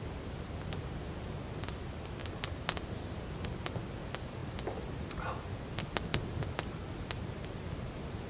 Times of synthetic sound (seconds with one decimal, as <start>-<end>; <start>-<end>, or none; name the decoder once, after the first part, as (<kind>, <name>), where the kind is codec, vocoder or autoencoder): none